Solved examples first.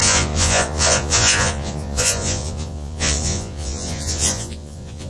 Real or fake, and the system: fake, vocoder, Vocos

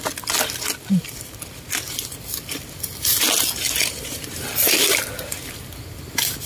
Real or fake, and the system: real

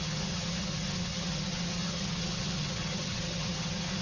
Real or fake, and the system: fake, vocoder, HiFi-GAN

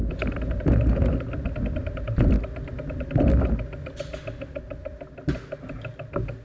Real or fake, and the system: real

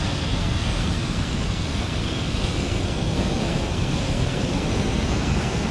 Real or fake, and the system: fake, codec, SNAC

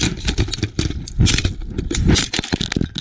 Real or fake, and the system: real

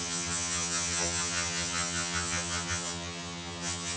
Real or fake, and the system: fake, vocoder, HiFi-GAN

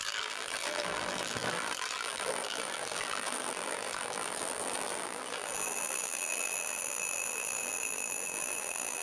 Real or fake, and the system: fake, vocoder, BigVGAN v2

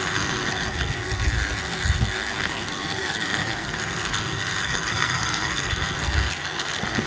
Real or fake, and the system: fake, codec, SNAC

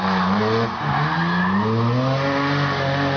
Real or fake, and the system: real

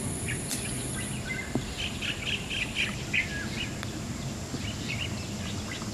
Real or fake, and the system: real